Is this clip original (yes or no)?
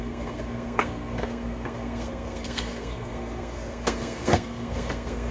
no